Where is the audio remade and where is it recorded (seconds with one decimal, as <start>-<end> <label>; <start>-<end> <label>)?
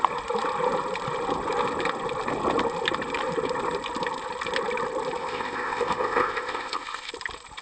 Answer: 0.0-5.2 recorded; 5.2-7.1 remade; 7.1-7.6 recorded